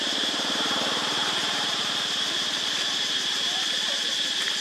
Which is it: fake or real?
fake